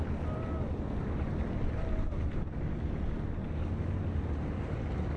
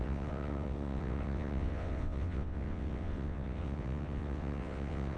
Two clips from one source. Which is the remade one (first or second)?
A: second